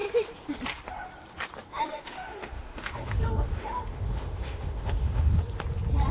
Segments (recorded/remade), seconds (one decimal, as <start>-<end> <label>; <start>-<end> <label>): 0.0-1.7 recorded; 1.7-5.4 remade; 5.4-6.1 recorded

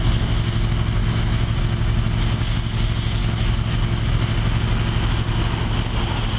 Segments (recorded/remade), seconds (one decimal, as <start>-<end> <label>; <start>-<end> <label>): 0.0-1.0 recorded; 1.0-1.6 remade; 1.6-3.2 recorded; 3.2-4.1 remade; 4.1-6.4 recorded

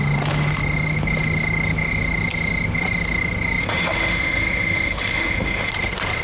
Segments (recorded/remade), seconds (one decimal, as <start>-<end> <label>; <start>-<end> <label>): 0.0-3.6 recorded; 3.6-5.7 remade; 5.7-6.2 recorded